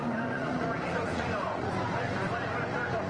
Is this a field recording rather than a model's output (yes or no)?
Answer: no